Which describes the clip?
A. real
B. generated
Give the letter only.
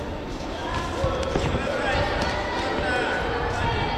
A